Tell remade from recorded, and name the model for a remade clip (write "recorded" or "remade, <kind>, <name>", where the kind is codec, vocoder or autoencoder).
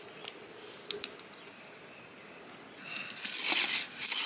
recorded